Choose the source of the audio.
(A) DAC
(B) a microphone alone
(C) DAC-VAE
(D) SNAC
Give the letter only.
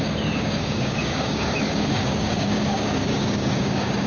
A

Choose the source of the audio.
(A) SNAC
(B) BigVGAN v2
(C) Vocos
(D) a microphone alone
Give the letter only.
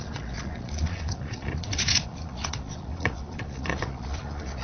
C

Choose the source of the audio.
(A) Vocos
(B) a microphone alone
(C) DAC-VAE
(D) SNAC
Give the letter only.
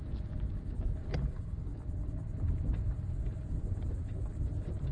B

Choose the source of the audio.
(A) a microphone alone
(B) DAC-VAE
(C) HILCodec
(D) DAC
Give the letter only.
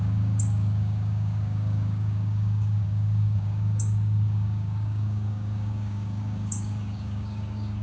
D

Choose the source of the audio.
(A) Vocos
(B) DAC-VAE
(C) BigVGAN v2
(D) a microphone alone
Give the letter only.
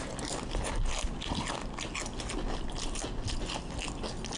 D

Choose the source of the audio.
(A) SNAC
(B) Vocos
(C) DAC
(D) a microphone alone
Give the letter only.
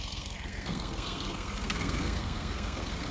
A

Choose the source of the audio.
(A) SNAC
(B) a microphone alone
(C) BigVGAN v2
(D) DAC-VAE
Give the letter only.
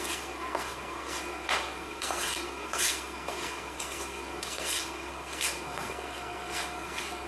A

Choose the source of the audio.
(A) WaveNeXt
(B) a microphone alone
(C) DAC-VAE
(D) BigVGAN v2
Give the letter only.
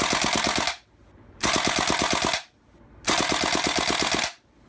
B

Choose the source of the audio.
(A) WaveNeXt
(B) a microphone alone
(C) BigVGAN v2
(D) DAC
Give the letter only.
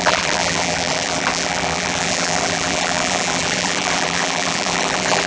C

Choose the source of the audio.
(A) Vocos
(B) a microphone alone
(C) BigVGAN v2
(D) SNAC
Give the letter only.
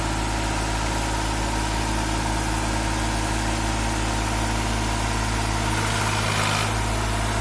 B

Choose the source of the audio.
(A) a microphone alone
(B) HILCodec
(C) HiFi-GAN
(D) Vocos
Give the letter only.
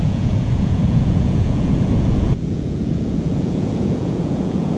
D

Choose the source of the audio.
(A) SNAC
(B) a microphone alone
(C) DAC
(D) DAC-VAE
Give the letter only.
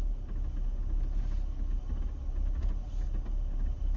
B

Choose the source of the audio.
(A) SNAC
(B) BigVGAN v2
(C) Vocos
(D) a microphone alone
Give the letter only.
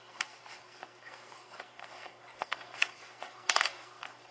A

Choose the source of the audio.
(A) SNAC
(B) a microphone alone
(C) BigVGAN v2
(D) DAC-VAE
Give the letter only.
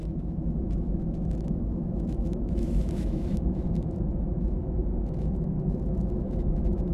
D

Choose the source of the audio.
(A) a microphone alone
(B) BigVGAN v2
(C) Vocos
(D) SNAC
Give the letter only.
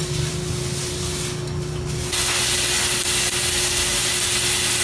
A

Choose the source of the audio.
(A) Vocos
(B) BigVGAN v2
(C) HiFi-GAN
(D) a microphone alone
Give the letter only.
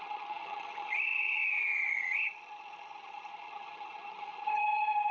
C